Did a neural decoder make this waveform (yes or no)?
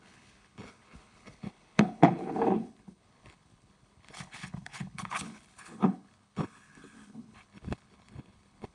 yes